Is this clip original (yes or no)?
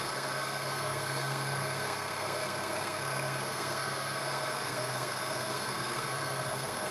no